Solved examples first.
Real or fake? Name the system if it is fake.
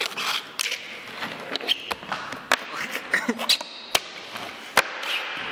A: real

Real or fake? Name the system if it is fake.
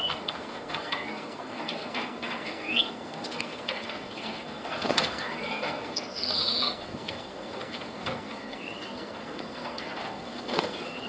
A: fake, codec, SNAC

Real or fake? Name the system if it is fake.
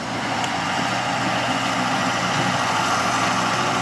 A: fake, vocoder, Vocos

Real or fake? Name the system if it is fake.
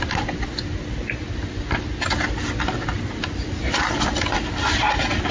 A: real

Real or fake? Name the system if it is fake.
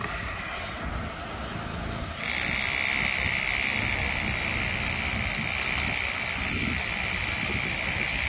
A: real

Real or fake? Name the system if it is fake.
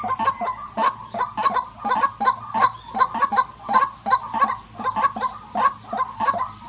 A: real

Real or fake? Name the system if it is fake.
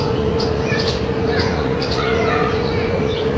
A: fake, vocoder, Vocos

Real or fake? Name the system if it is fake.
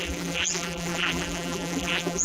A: fake, vocoder, BigVGAN v2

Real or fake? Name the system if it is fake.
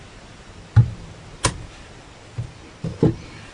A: real